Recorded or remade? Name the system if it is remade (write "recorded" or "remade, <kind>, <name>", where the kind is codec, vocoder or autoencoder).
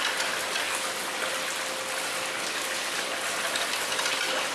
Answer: recorded